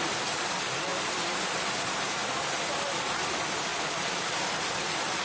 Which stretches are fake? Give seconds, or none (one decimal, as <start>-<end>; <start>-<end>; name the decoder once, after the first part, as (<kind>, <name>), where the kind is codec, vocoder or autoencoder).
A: none